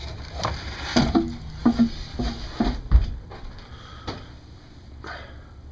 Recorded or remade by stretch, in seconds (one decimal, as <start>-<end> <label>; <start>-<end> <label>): 0.0-5.7 recorded